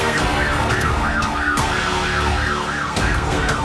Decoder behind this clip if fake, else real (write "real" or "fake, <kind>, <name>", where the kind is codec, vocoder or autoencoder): fake, codec, SNAC